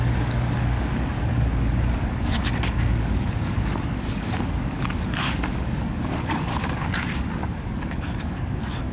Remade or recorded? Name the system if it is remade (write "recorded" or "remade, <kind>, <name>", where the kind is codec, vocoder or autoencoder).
remade, codec, DAC